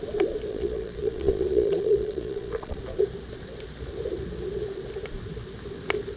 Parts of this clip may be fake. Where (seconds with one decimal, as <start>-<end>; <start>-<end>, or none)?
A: 0.5-2.8